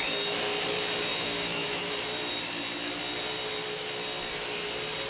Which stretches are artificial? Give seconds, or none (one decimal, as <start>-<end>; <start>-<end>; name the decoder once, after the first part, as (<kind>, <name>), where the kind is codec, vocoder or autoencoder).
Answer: 1.1-1.9 (autoencoder, DAC-VAE)